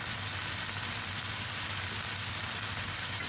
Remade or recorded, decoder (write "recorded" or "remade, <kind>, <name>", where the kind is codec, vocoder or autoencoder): recorded